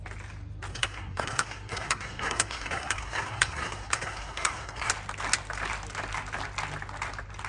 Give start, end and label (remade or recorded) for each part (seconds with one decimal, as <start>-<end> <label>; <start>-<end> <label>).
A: 0.0-0.7 recorded; 0.7-4.9 remade; 4.9-7.5 recorded